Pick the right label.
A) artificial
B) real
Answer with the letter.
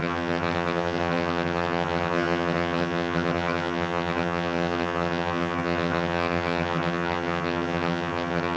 A